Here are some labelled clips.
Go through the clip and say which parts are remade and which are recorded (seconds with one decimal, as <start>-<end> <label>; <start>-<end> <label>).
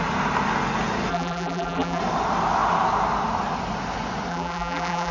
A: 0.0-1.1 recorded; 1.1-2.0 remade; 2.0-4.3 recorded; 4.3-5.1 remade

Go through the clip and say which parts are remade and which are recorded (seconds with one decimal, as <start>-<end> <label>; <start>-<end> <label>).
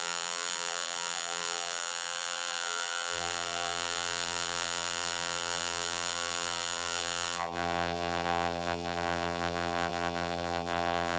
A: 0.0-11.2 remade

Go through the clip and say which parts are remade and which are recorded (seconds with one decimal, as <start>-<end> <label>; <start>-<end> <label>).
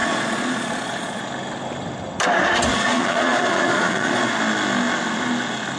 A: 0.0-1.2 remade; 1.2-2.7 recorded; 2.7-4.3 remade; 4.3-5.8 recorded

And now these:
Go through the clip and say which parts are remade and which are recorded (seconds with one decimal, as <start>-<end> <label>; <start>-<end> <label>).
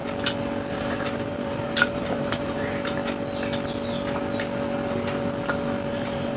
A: 0.0-0.7 recorded; 0.7-3.0 remade; 3.0-5.9 recorded; 5.9-6.4 remade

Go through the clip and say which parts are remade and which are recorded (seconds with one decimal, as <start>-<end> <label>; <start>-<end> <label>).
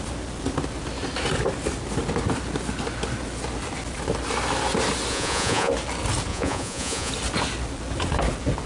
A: 0.0-5.1 recorded; 5.1-5.7 remade; 5.7-6.3 recorded; 6.3-7.1 remade; 7.1-8.7 recorded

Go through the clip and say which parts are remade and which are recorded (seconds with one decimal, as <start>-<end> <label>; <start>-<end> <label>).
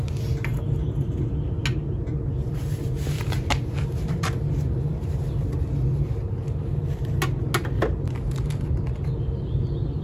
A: 0.0-10.0 recorded